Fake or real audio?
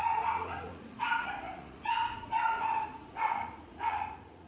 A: fake